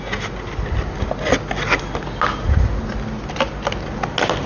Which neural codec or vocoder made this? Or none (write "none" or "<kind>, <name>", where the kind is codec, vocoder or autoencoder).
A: none